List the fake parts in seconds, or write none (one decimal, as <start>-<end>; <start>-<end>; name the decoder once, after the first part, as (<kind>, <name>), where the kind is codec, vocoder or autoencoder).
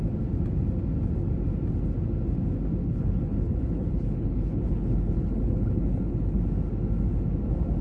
2.8-6.4 (codec, HILCodec)